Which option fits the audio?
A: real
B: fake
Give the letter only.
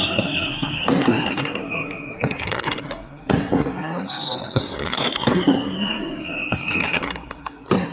B